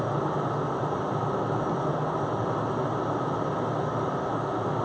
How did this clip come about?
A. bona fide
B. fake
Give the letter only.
A